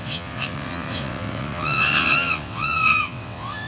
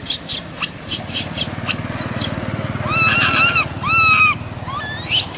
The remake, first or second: first